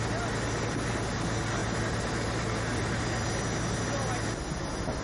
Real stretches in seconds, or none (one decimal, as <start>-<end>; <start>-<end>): 0.0-5.0